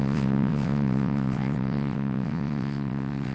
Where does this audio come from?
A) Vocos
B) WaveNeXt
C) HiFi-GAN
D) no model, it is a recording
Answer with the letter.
B